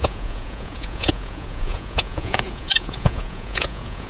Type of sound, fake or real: fake